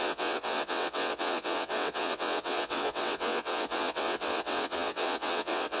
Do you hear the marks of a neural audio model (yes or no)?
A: yes